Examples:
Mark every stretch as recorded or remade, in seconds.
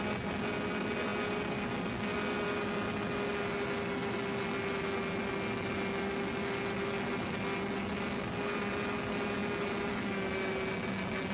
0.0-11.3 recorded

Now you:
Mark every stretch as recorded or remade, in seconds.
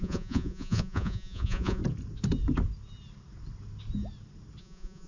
0.0-1.8 remade; 1.8-4.6 recorded; 4.6-5.1 remade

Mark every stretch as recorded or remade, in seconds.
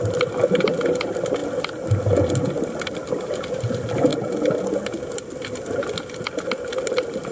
0.0-7.3 recorded